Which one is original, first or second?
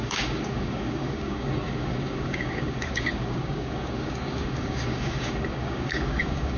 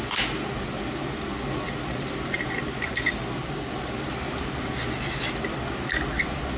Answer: second